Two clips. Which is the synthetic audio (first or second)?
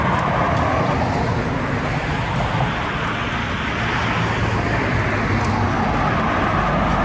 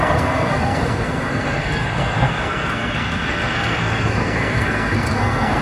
second